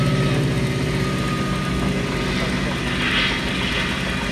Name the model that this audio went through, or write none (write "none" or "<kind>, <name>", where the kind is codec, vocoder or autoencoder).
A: none